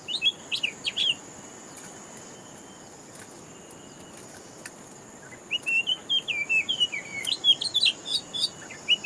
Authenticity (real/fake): real